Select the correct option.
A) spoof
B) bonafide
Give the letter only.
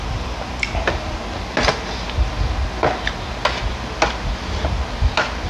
B